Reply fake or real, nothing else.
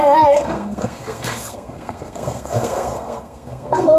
fake